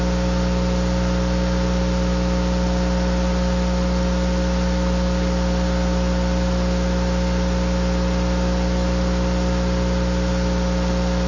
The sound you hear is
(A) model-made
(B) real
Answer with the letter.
B